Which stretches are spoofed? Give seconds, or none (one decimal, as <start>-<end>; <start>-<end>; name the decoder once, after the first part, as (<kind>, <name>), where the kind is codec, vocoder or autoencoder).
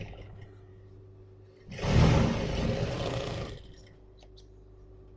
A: none